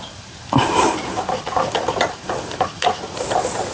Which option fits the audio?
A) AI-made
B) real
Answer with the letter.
B